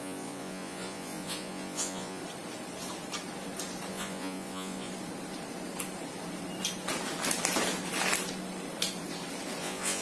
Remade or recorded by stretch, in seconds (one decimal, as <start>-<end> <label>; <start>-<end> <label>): 0.0-2.2 remade; 2.2-3.9 recorded; 3.9-4.9 remade; 4.9-9.6 recorded; 9.6-10.0 remade